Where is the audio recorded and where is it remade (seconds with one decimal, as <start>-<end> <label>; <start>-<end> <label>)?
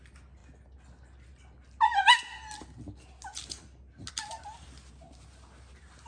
0.0-6.1 recorded